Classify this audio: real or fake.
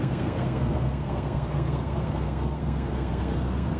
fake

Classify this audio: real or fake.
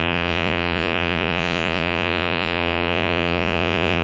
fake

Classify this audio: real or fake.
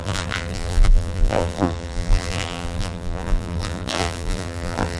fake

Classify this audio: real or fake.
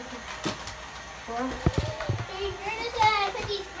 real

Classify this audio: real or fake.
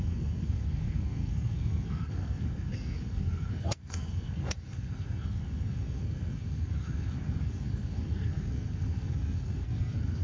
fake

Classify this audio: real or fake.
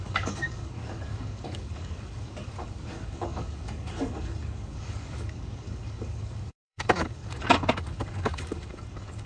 fake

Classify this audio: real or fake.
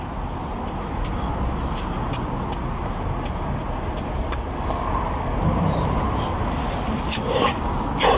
real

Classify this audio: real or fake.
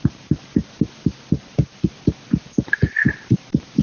real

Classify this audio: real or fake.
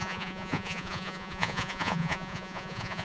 fake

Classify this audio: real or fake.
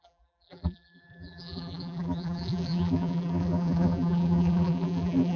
fake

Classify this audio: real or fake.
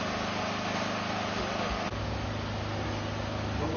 real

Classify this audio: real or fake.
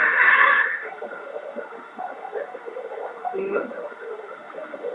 fake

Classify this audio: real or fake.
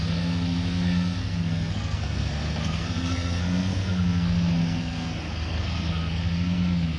fake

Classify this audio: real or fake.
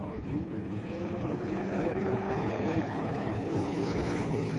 fake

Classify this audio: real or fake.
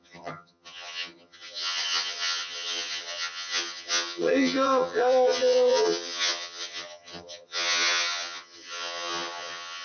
fake